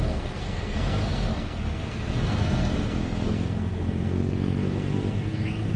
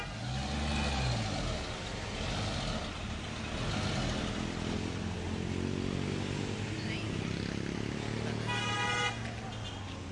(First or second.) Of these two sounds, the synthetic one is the first